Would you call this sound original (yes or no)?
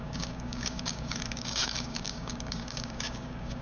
no